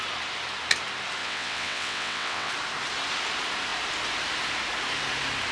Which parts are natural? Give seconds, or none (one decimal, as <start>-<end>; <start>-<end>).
0.0-1.2; 2.5-5.5